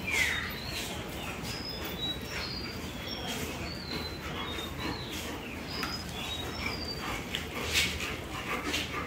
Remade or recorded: recorded